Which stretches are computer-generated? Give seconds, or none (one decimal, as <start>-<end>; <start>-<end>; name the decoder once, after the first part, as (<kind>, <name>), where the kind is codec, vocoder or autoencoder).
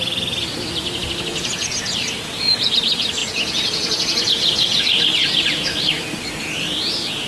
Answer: 1.3-2.7 (vocoder, Vocos); 3.2-4.8